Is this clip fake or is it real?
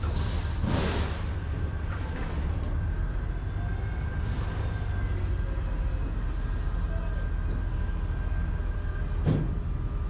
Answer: real